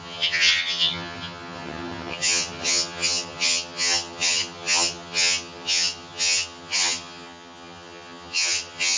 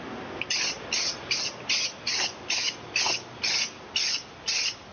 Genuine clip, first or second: second